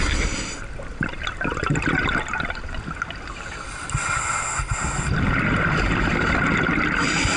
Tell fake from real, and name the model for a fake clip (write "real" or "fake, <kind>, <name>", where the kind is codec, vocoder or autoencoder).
real